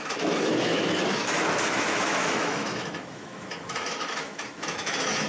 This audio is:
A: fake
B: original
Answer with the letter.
A